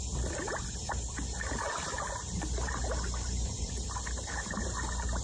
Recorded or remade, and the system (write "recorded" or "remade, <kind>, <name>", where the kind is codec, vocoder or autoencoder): remade, vocoder, BigVGAN v2